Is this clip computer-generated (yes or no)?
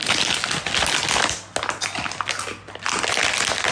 no